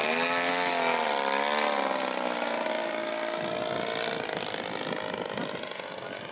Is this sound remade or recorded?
recorded